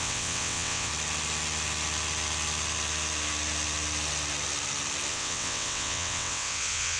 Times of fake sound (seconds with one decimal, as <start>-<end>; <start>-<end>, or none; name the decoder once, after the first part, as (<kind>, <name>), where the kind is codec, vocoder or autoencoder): 0.0-0.9 (vocoder, WaveNeXt); 5.1-7.0